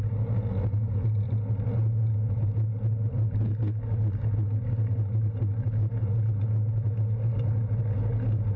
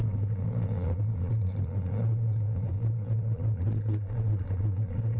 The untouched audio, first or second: first